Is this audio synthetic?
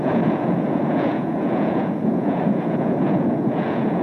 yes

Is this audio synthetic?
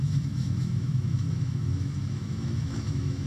yes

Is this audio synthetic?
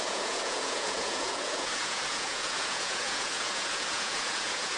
yes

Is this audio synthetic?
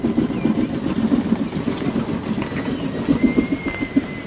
no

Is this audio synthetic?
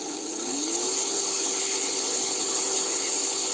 yes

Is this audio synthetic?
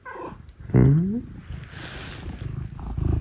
no